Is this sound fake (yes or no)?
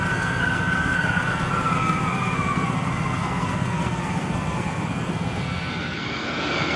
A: yes